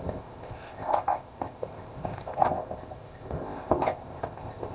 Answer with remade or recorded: remade